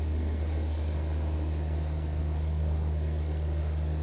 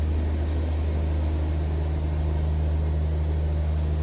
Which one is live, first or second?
second